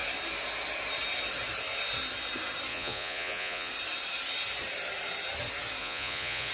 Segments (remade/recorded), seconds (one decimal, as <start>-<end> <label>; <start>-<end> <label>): 0.0-2.7 recorded; 2.7-3.7 remade; 3.7-5.8 recorded; 5.8-6.5 remade